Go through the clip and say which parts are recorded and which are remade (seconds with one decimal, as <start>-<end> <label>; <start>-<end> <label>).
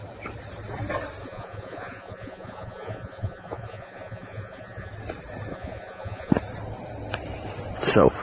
0.0-1.2 recorded; 1.2-4.9 remade; 4.9-5.5 recorded; 5.5-6.3 remade; 6.3-8.2 recorded